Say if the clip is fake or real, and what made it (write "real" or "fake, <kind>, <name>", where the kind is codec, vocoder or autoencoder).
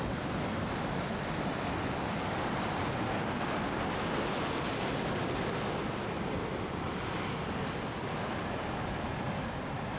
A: real